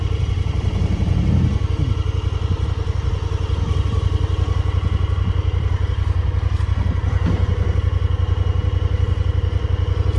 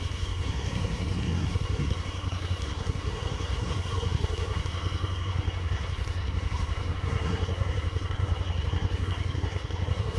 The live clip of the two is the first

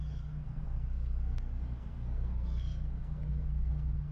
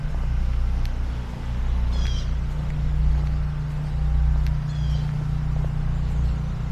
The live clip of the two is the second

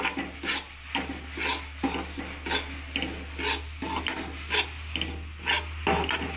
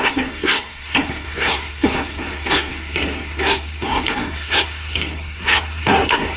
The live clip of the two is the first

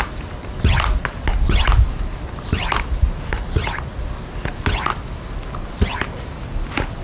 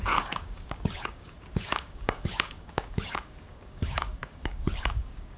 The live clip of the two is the first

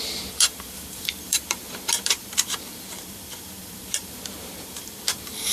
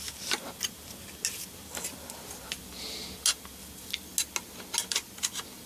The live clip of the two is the second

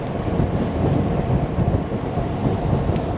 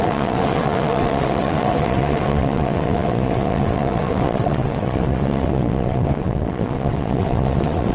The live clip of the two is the first